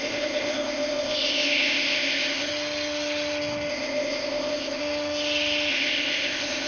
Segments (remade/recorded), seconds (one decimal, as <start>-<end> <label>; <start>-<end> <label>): 0.0-2.5 remade; 2.5-3.7 recorded; 3.7-4.8 remade; 4.8-5.7 recorded; 5.7-6.7 remade